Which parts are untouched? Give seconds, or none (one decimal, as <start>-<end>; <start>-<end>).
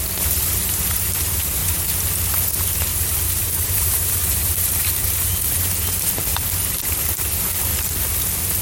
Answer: 0.0-2.9; 5.5-8.6